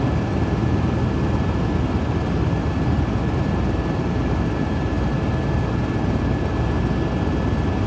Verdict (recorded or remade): recorded